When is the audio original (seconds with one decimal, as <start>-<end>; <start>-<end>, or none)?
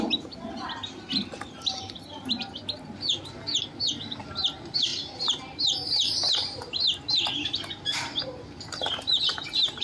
2.6-4.2